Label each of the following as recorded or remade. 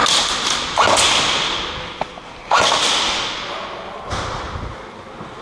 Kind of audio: recorded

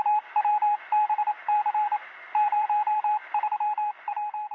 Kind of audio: remade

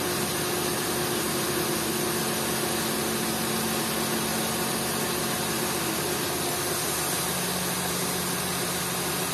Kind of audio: recorded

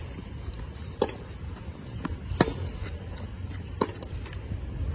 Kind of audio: recorded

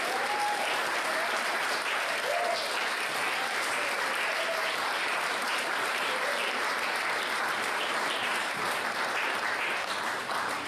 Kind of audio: remade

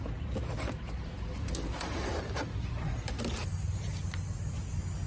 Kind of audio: recorded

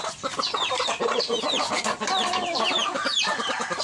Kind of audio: remade